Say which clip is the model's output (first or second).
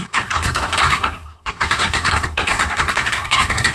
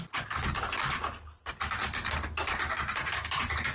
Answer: first